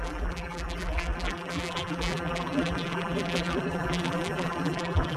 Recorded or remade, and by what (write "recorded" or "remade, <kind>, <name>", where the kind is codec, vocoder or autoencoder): remade, vocoder, BigVGAN v2